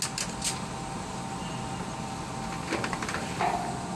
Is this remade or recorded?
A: recorded